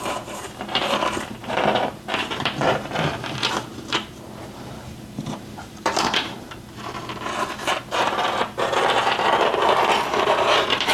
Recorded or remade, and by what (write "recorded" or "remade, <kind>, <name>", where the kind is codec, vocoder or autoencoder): remade, vocoder, BigVGAN v2